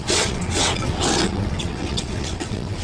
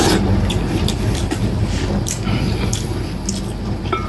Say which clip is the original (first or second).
second